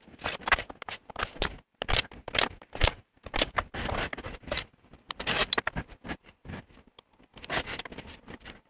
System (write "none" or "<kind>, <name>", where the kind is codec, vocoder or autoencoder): none